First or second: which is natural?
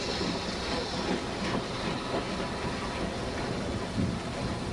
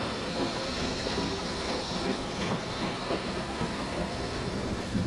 first